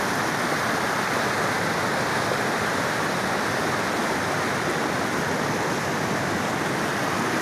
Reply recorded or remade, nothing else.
recorded